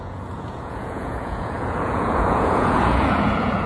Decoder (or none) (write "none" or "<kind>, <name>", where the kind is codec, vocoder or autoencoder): vocoder, Vocos